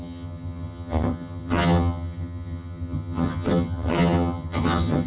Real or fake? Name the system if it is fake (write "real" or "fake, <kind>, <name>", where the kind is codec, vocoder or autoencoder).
fake, vocoder, HiFi-GAN